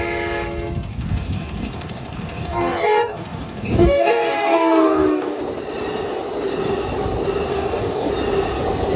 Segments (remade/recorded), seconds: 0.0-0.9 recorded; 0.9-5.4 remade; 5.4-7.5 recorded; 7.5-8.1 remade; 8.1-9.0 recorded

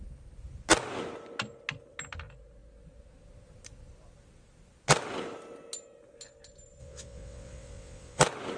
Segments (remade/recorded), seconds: 0.0-6.8 recorded; 6.8-8.2 remade; 8.2-8.6 recorded

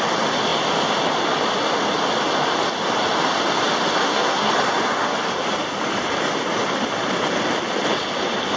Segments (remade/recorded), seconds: 0.0-4.0 recorded; 4.0-4.5 remade; 4.5-8.6 recorded

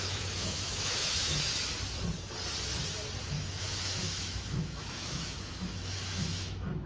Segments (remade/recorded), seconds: 0.0-1.5 remade; 1.5-3.2 recorded; 3.2-6.9 remade

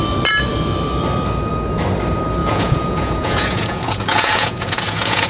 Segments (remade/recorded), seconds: 0.0-2.4 recorded; 2.4-5.3 remade

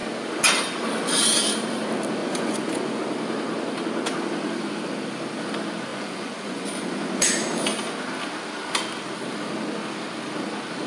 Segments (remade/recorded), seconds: 0.0-2.2 recorded; 2.2-3.0 remade; 3.0-5.9 recorded; 5.9-7.3 remade; 7.3-10.9 recorded

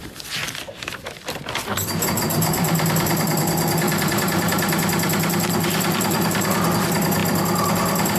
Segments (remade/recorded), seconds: 0.0-8.2 remade

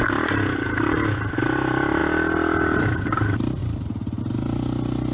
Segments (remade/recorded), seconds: 0.0-5.1 recorded